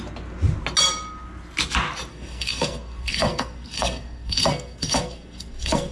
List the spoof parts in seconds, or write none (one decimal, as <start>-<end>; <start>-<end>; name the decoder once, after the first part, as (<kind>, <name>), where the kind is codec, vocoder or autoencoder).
2.1-5.9 (codec, SNAC)